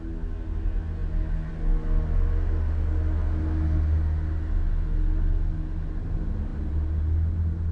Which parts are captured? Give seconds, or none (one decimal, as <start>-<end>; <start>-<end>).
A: 0.0-7.7

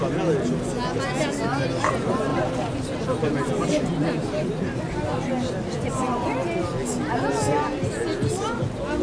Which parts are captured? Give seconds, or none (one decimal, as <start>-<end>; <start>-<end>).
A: 0.0-9.0

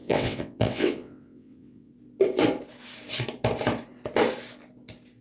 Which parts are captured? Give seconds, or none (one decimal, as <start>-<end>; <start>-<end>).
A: 1.9-5.2